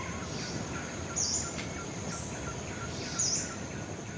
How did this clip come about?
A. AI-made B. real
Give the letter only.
A